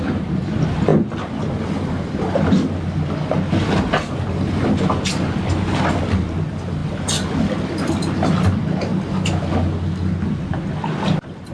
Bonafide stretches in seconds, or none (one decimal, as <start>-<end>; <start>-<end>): 0.0-11.5